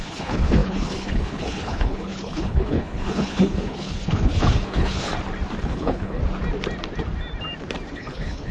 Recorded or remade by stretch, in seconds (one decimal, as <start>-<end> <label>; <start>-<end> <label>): 0.0-5.1 remade; 5.1-5.6 recorded; 5.6-6.2 remade; 6.2-7.9 recorded; 7.9-8.5 remade

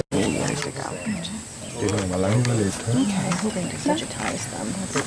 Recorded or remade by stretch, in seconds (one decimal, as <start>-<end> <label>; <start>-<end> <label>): 0.0-5.1 recorded

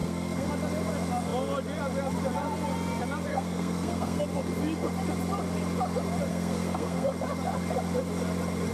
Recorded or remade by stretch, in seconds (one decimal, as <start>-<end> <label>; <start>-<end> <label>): 0.0-0.5 remade; 0.5-3.3 recorded; 3.3-4.2 remade; 4.2-6.3 recorded; 6.3-7.1 remade; 7.1-8.7 recorded

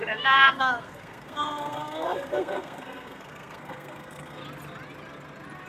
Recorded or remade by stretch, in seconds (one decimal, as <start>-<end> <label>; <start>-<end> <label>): 0.0-4.4 remade; 4.4-5.7 recorded

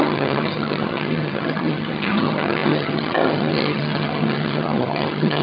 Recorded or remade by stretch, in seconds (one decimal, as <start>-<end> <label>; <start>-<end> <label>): 0.0-5.4 remade

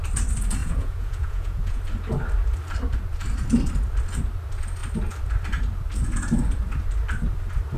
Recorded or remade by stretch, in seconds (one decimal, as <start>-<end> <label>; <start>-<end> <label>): 0.0-0.6 recorded; 0.6-1.8 remade; 1.8-7.8 recorded

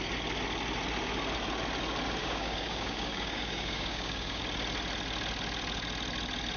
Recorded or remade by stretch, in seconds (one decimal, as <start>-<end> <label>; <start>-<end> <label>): 0.0-2.2 recorded; 2.2-4.4 remade; 4.4-6.6 recorded

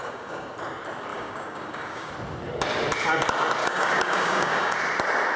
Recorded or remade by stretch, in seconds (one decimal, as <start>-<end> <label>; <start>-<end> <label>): 0.0-0.5 remade; 0.5-1.1 recorded; 1.1-2.1 remade; 2.1-3.6 recorded; 3.6-4.8 remade; 4.8-5.4 recorded